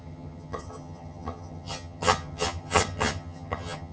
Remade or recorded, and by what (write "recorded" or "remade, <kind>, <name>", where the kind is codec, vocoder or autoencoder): remade, vocoder, HiFi-GAN